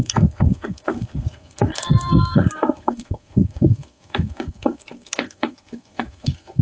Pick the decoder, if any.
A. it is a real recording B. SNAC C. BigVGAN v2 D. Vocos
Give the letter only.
B